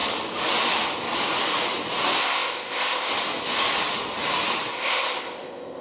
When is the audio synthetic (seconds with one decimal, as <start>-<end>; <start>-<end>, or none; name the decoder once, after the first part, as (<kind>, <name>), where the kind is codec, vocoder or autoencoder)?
2.2-3.1 (codec, ZipCodec); 4.7-5.8